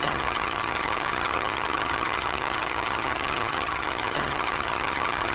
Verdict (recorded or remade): remade